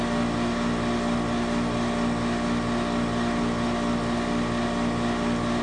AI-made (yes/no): no